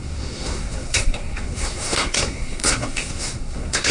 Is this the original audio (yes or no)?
no